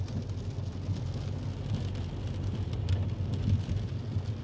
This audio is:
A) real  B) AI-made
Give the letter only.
A